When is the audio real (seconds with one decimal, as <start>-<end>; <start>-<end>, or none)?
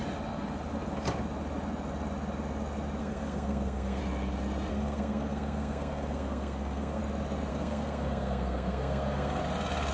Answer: 0.0-3.0; 4.0-4.7; 7.0-7.5; 9.4-9.9